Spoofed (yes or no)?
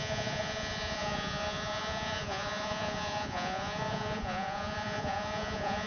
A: yes